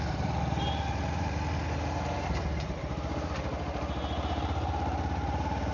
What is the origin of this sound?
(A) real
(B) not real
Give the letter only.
B